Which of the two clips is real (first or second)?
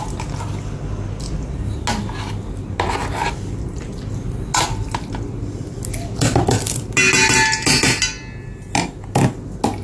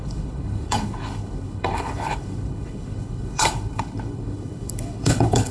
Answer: first